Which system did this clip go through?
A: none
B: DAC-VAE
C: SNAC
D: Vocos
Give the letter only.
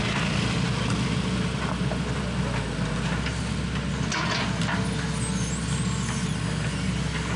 A